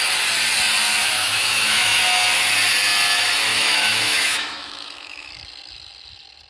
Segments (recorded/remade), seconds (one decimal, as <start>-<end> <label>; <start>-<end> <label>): 0.0-1.0 recorded; 1.0-2.0 remade; 2.0-3.5 recorded; 3.5-5.3 remade; 5.3-6.5 recorded